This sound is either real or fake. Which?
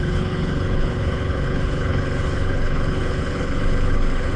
fake